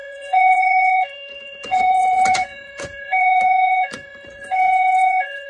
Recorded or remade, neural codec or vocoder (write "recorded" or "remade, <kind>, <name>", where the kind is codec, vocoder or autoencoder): remade, vocoder, Vocos